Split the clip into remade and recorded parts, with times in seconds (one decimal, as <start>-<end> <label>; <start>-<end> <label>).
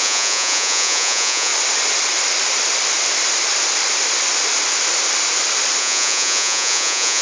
0.0-1.5 remade; 1.5-5.8 recorded; 5.8-7.2 remade